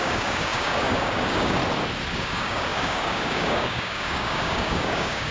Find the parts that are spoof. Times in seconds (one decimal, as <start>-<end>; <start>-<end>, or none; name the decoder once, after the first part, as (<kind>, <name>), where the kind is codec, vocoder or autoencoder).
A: 0.0-1.6 (codec, DAC); 2.1-5.3